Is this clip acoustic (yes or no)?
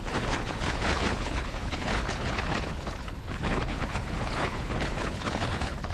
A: no